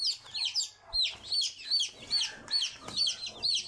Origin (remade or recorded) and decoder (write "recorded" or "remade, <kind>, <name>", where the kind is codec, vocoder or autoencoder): recorded